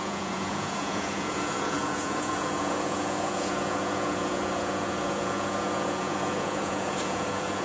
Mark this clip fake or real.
fake